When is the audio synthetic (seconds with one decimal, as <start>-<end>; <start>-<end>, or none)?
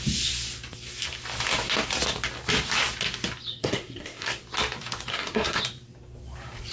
3.6-4.4; 5.1-5.6